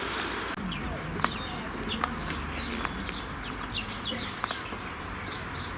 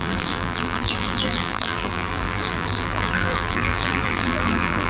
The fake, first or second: second